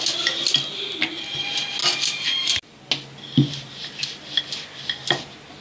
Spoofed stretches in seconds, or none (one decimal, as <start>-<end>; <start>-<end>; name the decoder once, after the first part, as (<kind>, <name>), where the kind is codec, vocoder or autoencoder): none